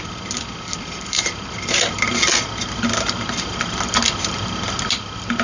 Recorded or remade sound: recorded